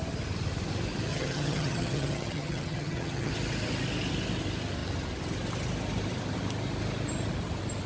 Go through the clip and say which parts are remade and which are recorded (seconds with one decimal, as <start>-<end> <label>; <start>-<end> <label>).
0.0-1.1 recorded; 1.1-3.3 remade; 3.3-7.9 recorded